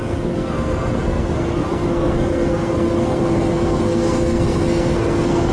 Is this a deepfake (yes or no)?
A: yes